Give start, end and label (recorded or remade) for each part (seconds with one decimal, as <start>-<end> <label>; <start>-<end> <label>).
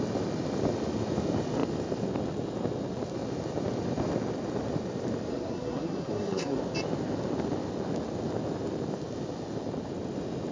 0.0-5.3 recorded; 5.3-6.6 remade; 6.6-10.5 recorded